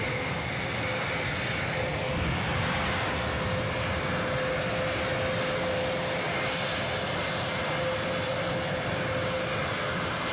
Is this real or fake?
real